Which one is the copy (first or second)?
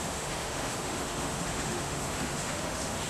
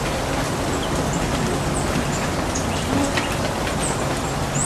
first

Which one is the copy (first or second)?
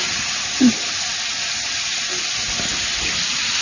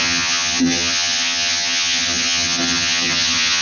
second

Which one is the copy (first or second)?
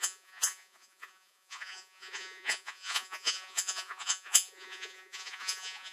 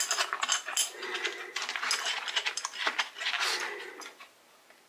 first